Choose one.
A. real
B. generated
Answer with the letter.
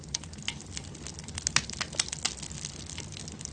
A